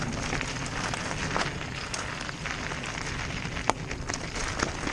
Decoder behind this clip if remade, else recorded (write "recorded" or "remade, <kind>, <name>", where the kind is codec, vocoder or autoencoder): recorded